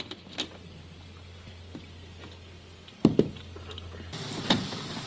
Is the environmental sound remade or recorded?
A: recorded